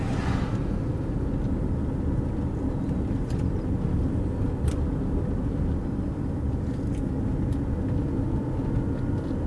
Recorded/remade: recorded